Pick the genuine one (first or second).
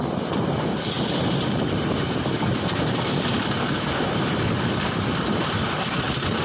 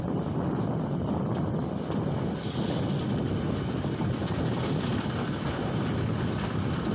second